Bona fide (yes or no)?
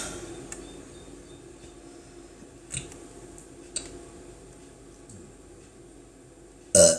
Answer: yes